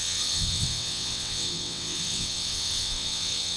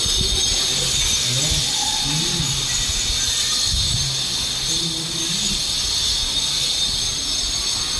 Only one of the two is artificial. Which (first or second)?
first